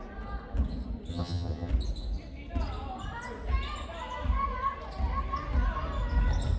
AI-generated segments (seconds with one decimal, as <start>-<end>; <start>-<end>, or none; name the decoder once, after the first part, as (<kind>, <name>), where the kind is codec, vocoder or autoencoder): 1.1-1.7 (vocoder, HiFi-GAN)